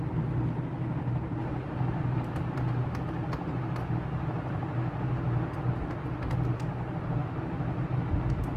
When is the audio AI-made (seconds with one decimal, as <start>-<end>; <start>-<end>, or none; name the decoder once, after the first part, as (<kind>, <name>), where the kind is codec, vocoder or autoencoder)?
none